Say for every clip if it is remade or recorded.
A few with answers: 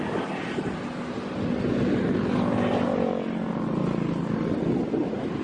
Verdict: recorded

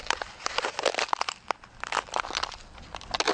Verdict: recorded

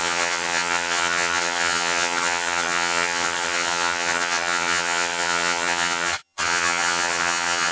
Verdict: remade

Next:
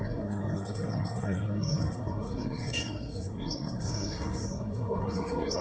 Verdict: remade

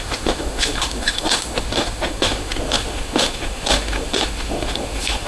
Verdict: remade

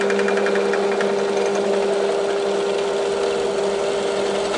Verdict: recorded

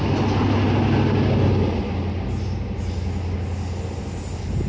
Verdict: recorded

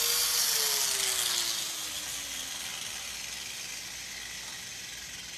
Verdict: recorded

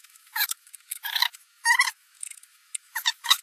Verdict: remade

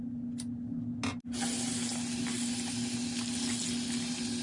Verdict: recorded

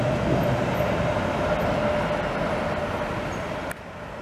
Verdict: recorded